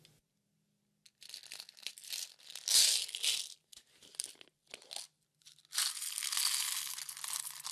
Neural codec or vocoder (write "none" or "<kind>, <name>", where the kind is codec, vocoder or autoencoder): none